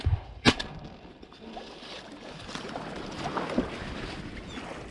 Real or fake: real